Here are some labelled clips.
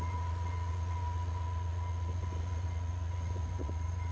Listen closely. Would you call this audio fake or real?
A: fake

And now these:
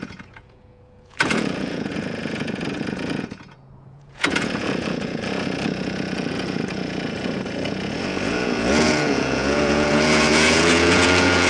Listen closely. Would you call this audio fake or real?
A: fake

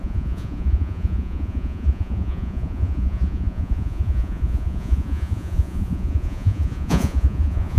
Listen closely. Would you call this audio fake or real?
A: fake